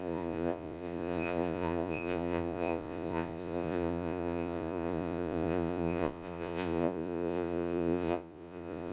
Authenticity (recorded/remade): remade